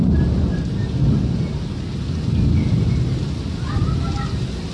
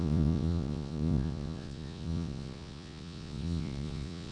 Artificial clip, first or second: second